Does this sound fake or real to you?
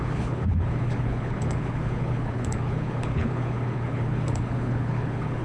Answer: fake